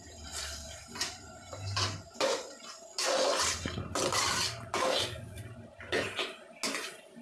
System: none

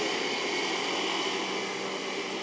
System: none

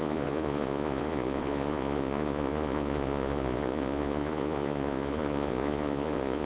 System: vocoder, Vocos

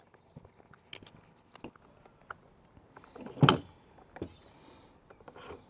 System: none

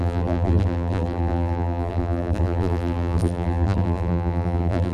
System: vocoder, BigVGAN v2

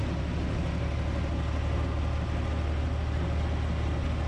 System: none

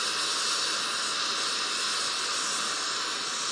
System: none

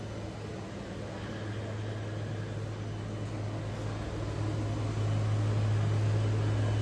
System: none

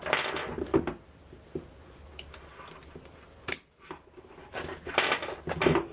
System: none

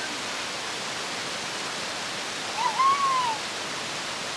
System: none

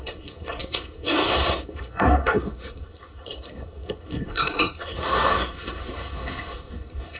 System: codec, SNAC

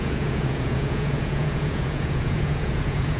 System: vocoder, Vocos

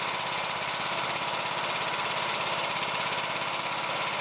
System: none